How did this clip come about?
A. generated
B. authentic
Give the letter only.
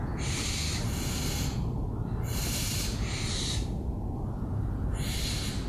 A